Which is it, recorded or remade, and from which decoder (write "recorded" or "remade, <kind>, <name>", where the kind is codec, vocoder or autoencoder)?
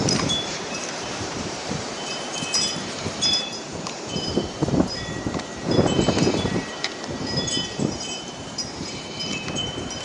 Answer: remade, vocoder, BigVGAN v2